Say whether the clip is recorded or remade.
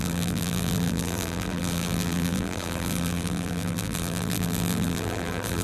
remade